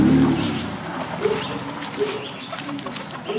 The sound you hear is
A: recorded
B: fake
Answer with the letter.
A